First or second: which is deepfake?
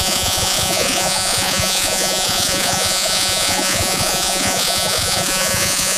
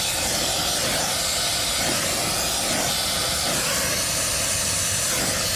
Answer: first